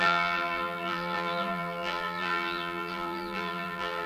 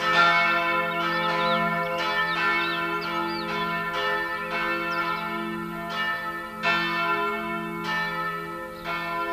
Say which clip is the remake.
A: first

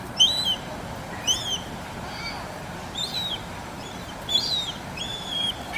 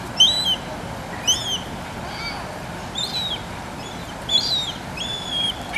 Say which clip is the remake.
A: first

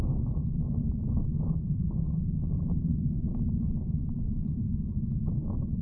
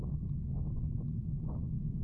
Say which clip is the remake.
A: first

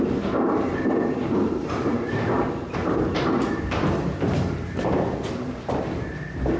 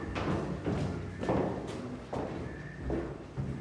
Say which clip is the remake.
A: first